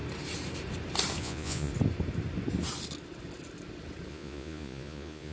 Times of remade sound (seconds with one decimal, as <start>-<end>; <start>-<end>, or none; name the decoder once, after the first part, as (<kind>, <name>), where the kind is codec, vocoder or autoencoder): 1.2-1.7 (vocoder, Vocos); 4.1-5.3